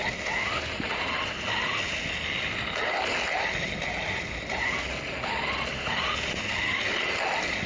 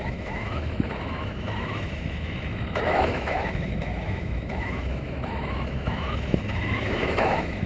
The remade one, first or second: second